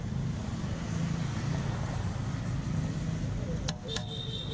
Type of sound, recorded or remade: recorded